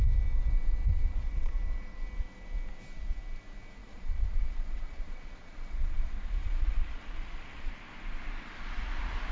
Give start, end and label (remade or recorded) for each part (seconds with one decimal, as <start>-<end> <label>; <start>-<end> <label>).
0.0-0.9 recorded; 0.9-1.6 remade; 1.6-3.8 recorded; 3.8-6.0 remade; 6.0-6.4 recorded; 6.4-7.7 remade; 7.7-9.3 recorded